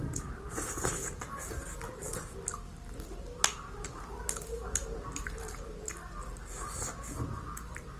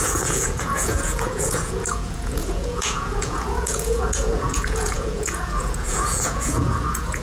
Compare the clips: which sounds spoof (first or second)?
second